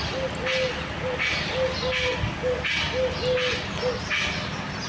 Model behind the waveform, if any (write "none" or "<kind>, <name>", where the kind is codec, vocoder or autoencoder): none